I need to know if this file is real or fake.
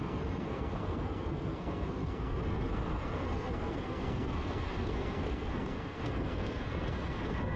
fake